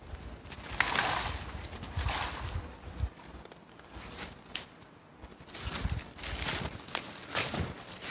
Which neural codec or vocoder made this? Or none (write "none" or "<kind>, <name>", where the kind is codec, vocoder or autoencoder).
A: none